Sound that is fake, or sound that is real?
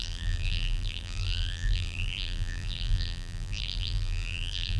fake